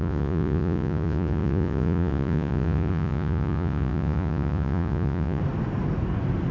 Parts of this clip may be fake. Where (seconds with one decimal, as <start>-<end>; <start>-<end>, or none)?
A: 0.0-5.4